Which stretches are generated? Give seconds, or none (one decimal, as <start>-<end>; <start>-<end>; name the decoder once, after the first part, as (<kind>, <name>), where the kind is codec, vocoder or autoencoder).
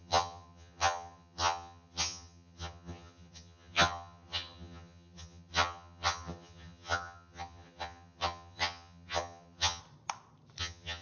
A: 0.0-9.8 (vocoder, HiFi-GAN); 10.6-11.0